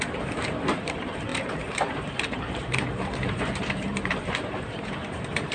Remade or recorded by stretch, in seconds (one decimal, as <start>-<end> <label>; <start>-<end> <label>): 0.0-5.5 remade